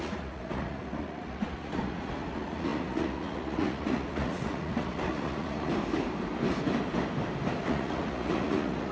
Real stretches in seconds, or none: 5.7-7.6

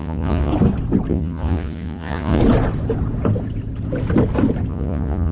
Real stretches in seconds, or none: 0.5-1.1; 2.4-4.7

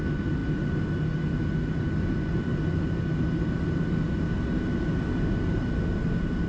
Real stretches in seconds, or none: 0.0-6.5

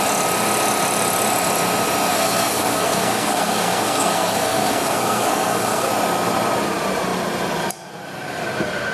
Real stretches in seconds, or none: 0.0-2.1; 5.9-8.9

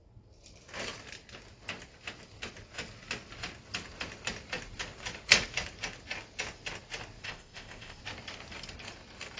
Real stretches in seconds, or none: 0.0-7.2; 8.0-9.4